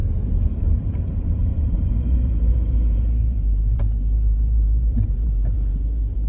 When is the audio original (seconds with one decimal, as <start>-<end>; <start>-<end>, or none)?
none